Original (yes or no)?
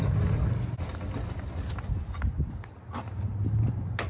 yes